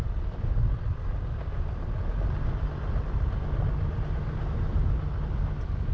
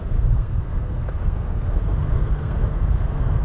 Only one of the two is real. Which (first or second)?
first